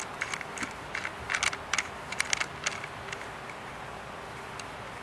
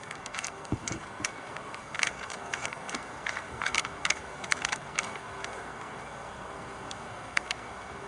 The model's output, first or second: second